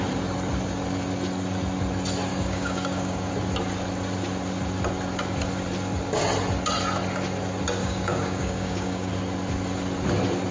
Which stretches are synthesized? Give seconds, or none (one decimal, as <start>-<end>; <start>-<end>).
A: 2.3-3.3; 7.8-9.1